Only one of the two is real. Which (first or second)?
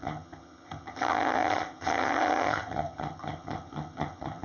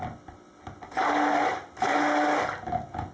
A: second